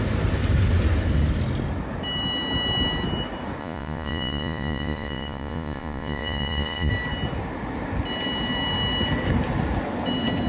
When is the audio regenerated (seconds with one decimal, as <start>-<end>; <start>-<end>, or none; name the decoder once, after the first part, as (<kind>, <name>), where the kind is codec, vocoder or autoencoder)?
3.6-6.9 (vocoder, Vocos)